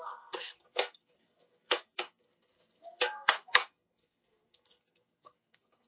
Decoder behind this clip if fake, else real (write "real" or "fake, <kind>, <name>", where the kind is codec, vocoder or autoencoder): fake, codec, SNAC